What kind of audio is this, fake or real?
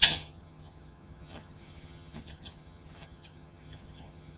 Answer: fake